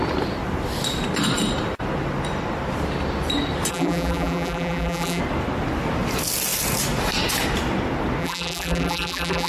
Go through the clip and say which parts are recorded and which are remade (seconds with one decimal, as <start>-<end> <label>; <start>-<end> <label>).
0.0-3.7 recorded; 3.7-5.2 remade; 5.2-8.2 recorded; 8.2-9.5 remade

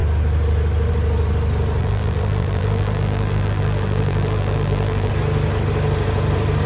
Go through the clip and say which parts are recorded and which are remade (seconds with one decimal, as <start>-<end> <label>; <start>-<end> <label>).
0.0-1.8 recorded; 1.8-5.1 remade; 5.1-6.7 recorded

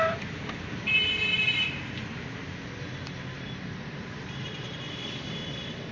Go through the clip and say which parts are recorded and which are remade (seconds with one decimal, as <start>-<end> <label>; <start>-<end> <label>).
0.0-2.4 remade; 2.4-3.6 recorded; 3.6-5.9 remade